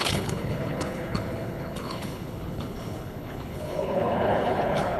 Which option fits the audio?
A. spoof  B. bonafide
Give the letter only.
A